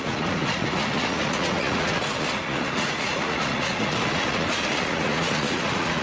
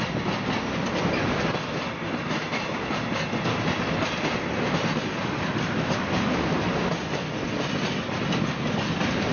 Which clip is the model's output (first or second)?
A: first